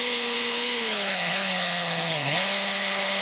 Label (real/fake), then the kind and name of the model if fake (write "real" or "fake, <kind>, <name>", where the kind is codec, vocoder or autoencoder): fake, codec, HILCodec